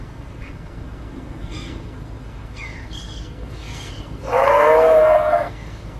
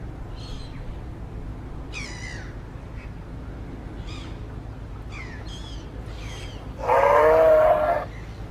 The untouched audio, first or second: second